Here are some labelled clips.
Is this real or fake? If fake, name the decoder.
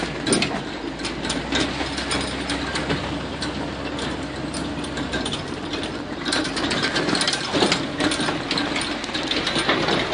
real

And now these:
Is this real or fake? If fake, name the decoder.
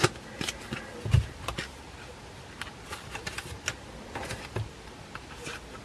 real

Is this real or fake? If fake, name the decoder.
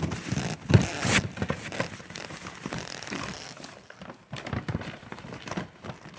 real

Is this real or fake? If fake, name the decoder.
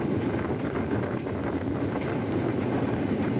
real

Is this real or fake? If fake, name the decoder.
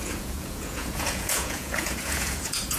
fake, vocoder, Vocos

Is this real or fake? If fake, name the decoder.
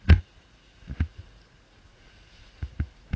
fake, vocoder, Vocos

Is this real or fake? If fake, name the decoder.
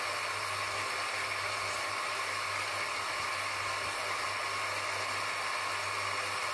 real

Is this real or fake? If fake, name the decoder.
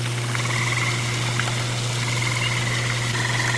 real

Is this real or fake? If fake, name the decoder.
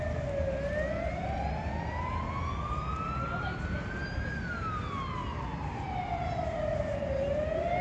real